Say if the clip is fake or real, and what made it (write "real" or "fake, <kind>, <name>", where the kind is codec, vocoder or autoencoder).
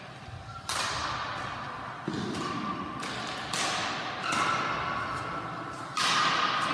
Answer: real